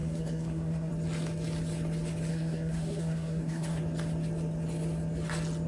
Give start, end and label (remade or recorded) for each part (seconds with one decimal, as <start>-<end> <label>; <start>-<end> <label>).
0.0-0.9 remade; 0.9-2.3 recorded; 2.3-3.8 remade; 3.8-5.7 recorded